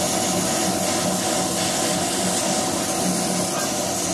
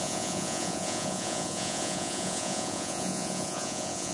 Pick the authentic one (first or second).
first